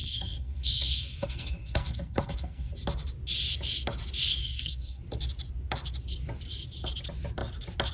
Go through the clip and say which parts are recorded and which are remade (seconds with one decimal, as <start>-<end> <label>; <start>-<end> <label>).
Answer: 0.0-2.7 remade; 2.7-4.4 recorded; 4.4-5.0 remade; 5.0-7.9 recorded